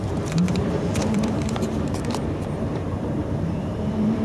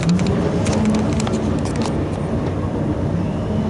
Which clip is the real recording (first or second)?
second